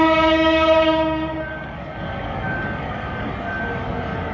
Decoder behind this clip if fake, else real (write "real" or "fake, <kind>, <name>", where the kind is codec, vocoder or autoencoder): fake, codec, DAC